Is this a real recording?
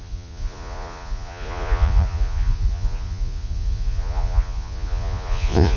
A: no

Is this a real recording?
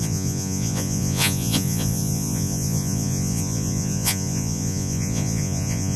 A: no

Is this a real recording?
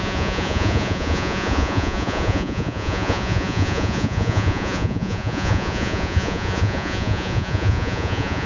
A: no